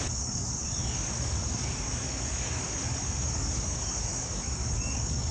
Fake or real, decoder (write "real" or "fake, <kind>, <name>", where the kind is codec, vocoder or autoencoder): fake, codec, DAC